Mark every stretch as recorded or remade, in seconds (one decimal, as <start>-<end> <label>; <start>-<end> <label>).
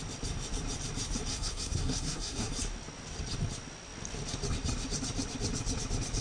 0.0-1.3 recorded; 1.3-2.5 remade; 2.5-6.2 recorded